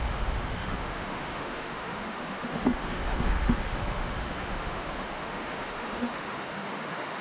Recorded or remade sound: remade